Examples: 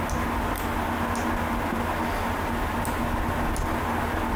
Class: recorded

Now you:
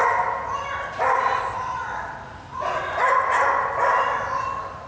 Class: recorded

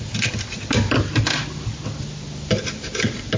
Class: recorded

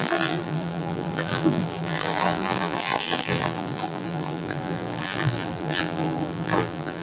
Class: remade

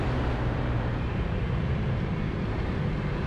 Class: remade